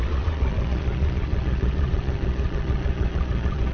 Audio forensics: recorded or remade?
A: remade